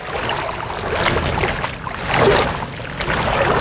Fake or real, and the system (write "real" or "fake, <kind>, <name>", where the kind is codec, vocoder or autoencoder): real